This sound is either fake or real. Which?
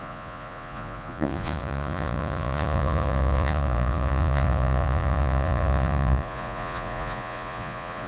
fake